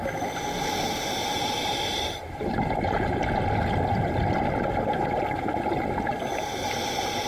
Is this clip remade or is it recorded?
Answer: recorded